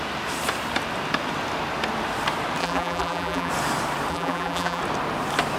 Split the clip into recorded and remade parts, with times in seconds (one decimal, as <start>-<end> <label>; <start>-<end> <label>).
0.0-2.6 recorded; 2.6-3.5 remade; 3.5-4.1 recorded; 4.1-4.8 remade; 4.8-5.6 recorded